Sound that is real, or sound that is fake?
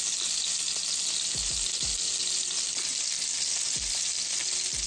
real